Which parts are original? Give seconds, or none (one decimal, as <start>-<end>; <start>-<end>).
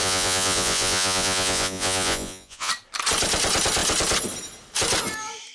2.7-5.5